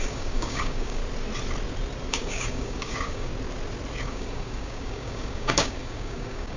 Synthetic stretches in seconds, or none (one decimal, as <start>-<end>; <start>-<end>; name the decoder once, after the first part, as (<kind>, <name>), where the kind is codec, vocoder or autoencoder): 0.0-1.0 (codec, DAC); 2.1-3.3; 4.0-6.6